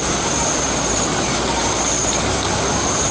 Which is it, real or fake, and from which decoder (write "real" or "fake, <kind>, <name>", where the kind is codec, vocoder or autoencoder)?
real